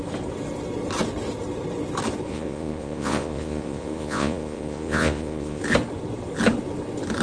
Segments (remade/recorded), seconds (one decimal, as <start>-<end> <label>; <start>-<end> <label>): 0.0-2.3 recorded; 2.3-5.6 remade; 5.6-7.2 recorded